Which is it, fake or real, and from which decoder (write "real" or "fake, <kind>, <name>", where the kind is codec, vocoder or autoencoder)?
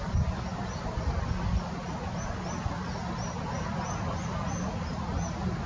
real